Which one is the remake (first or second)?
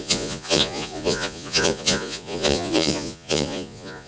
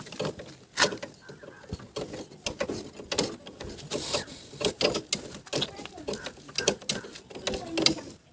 first